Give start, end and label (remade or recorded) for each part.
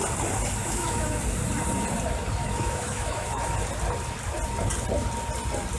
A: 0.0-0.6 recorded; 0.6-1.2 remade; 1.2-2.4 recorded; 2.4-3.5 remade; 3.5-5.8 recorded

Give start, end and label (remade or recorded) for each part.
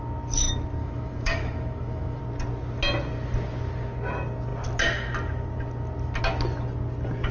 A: 0.0-0.8 recorded; 0.8-2.2 remade; 2.2-7.3 recorded